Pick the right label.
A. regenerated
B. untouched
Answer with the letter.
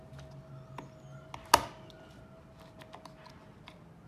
B